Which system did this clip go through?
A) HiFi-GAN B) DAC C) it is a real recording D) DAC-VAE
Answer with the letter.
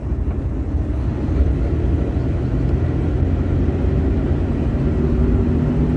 C